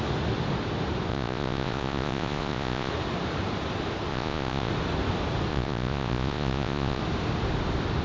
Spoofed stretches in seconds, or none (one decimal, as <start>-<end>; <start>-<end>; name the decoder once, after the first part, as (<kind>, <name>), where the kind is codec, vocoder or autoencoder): 1.1-2.9 (vocoder, Vocos); 4.1-4.7; 5.5-7.0